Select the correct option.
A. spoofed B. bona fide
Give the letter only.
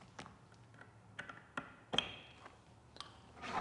B